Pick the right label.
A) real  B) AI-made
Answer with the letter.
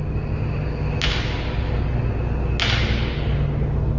A